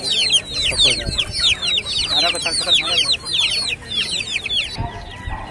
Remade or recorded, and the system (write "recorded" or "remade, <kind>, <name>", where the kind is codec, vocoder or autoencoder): recorded